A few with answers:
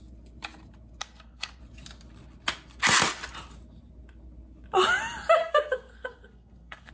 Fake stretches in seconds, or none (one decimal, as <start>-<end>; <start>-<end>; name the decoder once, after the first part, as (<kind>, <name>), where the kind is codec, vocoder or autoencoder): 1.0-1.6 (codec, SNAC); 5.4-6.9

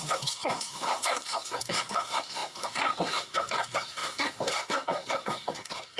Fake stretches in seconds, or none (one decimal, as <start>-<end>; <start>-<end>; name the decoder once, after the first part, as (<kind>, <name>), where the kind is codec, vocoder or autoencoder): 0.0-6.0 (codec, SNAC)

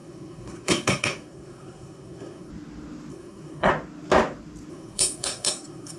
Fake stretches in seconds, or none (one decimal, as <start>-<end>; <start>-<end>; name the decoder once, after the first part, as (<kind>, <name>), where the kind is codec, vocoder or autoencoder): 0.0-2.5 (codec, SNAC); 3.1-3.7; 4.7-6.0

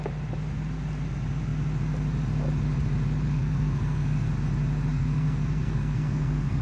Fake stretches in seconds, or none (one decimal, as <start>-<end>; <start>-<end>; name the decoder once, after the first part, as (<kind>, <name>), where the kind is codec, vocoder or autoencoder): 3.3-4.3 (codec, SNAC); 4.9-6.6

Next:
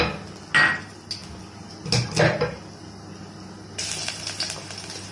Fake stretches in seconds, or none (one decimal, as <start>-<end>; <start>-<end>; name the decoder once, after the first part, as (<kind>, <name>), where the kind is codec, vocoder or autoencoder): none

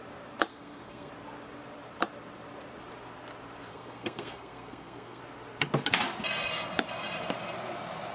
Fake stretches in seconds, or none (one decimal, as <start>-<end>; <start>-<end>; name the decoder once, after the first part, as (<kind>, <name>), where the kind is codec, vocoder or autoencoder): 0.5-1.1 (codec, SNAC); 3.7-5.2

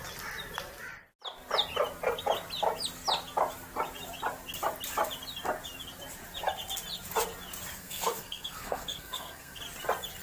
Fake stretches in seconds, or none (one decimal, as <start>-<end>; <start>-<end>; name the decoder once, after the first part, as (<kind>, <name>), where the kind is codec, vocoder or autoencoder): 7.7-9.6 (codec, SNAC)